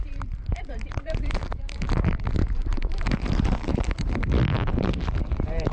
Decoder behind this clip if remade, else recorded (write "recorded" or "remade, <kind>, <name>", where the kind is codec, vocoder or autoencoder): remade, vocoder, BigVGAN v2